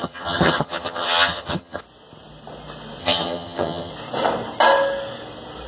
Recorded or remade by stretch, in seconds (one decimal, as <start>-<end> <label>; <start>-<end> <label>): 0.0-1.8 remade; 1.8-3.0 recorded; 3.0-3.9 remade; 3.9-5.7 recorded